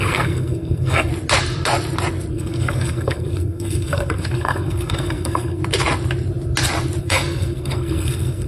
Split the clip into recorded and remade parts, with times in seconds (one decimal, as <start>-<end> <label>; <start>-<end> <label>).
0.0-1.1 remade; 1.1-2.3 recorded; 2.3-5.6 remade; 5.6-7.0 recorded; 7.0-8.5 remade